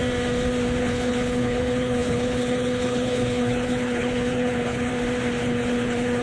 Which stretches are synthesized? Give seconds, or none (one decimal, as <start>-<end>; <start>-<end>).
0.8-4.9; 5.4-6.2